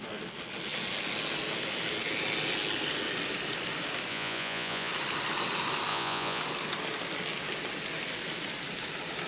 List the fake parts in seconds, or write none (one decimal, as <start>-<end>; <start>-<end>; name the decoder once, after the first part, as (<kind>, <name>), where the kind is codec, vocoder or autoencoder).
4.1-4.9 (vocoder, Vocos); 5.9-6.4

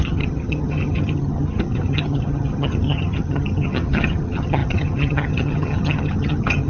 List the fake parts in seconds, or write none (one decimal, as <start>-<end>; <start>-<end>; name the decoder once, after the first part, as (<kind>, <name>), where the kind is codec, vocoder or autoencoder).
0.0-6.7 (vocoder, HiFi-GAN)

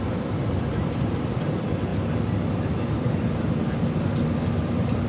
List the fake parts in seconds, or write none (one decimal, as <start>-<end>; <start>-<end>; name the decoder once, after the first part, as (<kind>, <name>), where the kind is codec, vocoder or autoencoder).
0.0-1.9 (vocoder, BigVGAN v2); 2.9-5.1